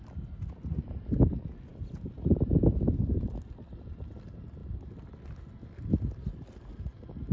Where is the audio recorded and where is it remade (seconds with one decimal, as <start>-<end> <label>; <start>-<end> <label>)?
0.0-7.3 recorded